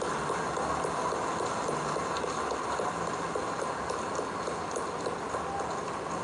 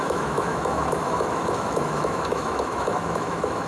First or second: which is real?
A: first